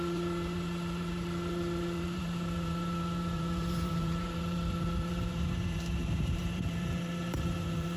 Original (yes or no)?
no